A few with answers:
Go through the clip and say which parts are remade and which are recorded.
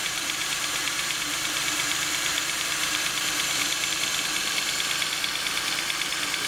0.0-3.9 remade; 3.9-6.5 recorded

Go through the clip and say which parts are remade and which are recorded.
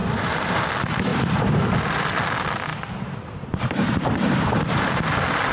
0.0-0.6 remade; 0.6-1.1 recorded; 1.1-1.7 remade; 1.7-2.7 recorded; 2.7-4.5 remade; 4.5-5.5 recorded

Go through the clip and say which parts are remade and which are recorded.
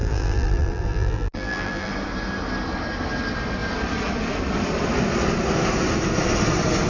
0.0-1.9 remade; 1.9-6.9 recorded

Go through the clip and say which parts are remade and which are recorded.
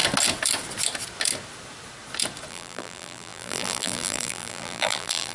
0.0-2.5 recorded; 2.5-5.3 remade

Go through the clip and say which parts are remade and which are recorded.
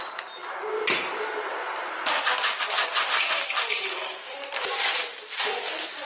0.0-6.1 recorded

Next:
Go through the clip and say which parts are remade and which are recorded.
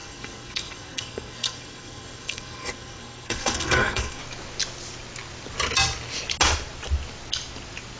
0.0-4.2 remade; 4.2-8.0 recorded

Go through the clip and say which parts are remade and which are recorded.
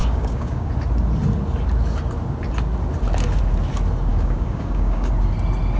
0.0-0.7 remade; 0.7-4.1 recorded; 4.1-5.1 remade; 5.1-5.8 recorded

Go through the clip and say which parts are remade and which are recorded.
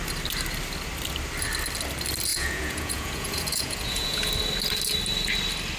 0.0-2.3 recorded; 2.3-4.3 remade; 4.3-5.8 recorded